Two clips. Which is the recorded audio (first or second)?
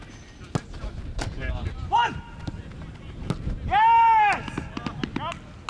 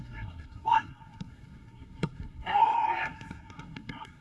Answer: first